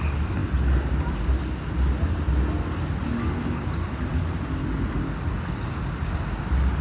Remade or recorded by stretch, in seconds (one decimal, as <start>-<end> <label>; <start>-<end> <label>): 0.0-6.8 recorded